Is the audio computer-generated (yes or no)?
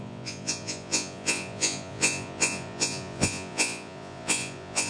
yes